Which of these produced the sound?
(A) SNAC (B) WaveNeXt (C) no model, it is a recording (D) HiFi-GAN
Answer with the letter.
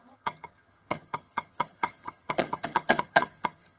D